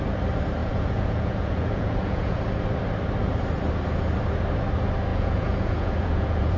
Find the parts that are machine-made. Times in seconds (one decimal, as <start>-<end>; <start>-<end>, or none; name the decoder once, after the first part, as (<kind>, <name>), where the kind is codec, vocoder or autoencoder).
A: 0.6-2.4 (vocoder, Vocos); 5.1-6.6

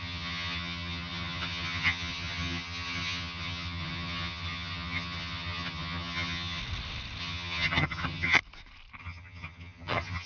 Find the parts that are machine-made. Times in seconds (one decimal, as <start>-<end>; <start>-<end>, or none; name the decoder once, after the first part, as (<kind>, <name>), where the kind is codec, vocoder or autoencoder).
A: 0.0-6.6 (vocoder, HiFi-GAN); 7.2-8.4; 9.0-10.3